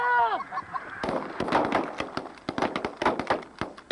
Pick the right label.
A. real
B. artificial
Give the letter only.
A